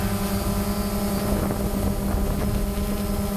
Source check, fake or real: real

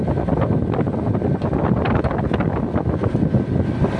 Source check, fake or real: real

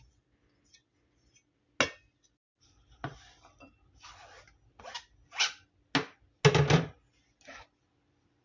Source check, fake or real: real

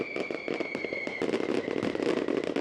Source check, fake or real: real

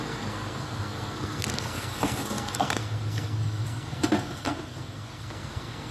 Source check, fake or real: fake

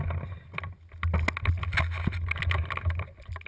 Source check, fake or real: real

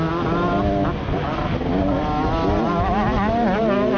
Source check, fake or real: real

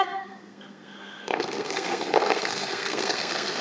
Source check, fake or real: fake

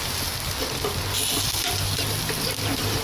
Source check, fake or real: real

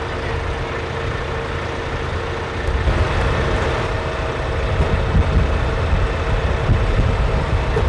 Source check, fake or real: real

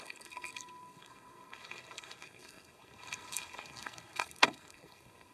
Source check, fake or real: fake